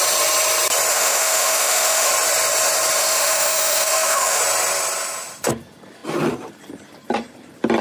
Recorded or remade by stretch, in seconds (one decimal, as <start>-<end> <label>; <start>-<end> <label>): 0.0-0.9 recorded; 0.9-2.1 remade; 2.1-3.0 recorded; 3.0-4.4 remade; 4.4-7.8 recorded